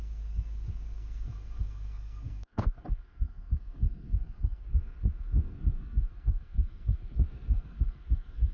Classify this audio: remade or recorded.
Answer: remade